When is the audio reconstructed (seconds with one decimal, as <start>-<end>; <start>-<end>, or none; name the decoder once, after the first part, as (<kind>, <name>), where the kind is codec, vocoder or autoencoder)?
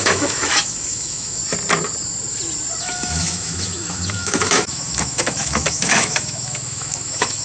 0.0-1.4 (autoencoder, DAC-VAE); 2.8-7.4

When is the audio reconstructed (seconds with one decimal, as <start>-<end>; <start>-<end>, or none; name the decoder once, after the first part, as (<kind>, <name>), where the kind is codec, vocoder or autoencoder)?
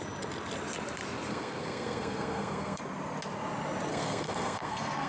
1.3-2.8 (codec, SNAC); 3.9-5.1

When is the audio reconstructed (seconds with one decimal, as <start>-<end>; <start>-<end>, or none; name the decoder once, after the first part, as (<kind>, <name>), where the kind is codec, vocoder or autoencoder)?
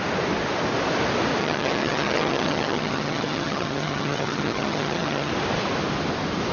1.4-5.3 (vocoder, HiFi-GAN)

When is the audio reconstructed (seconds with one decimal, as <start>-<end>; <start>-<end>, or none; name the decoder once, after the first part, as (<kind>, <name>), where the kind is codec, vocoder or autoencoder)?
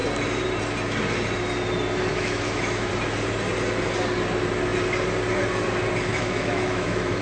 2.1-2.9 (autoencoder, DAC-VAE); 6.1-7.2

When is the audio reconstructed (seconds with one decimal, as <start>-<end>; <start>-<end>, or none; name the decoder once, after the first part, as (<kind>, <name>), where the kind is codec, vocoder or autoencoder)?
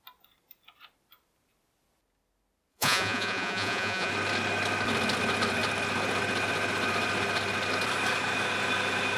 2.7-4.1 (vocoder, Vocos)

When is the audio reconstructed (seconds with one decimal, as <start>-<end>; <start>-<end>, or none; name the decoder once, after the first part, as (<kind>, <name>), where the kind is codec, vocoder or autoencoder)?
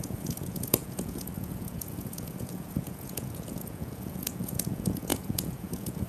0.0-6.1 (vocoder, Vocos)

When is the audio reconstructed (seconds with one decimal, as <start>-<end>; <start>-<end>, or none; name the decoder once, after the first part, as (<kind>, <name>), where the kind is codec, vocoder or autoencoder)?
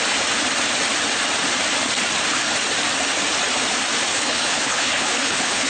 4.1-5.7 (codec, HILCodec)